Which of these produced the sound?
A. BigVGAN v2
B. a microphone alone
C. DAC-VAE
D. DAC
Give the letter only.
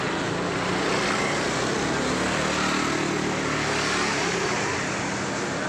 B